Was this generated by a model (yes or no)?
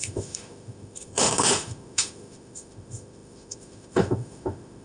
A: yes